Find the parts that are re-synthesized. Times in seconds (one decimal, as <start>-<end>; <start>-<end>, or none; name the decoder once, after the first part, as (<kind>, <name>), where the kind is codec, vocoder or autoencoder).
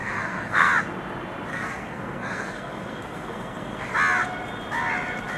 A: 0.0-0.7 (codec, SNAC); 1.5-3.9